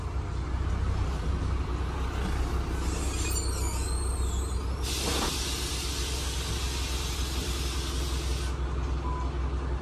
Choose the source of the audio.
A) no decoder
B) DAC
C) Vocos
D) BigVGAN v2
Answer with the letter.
A